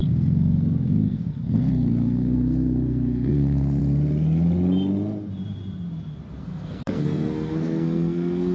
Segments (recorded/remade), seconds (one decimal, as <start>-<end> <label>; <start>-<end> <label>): 0.0-3.8 remade; 3.8-6.4 recorded; 6.4-8.5 remade